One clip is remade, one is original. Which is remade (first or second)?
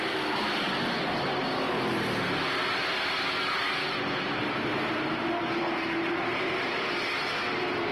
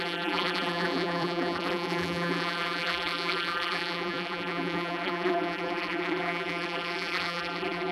second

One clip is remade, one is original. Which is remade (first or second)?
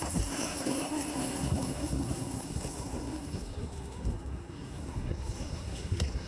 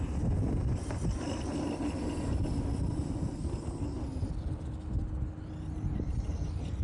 first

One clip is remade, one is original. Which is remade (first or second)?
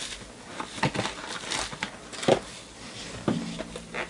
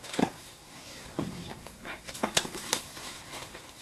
second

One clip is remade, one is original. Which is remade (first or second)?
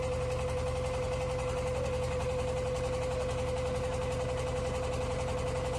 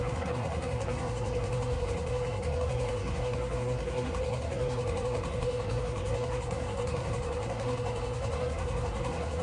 second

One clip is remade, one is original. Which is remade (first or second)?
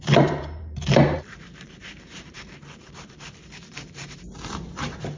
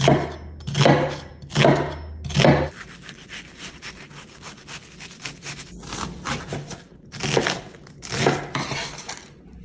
first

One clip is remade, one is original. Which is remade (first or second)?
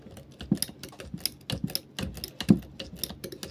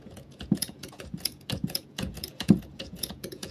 second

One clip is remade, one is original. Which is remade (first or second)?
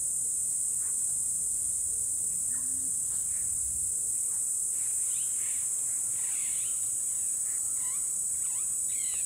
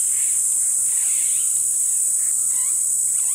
second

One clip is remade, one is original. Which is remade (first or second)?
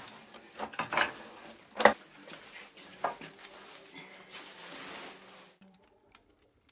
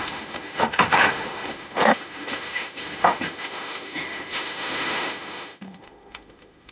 second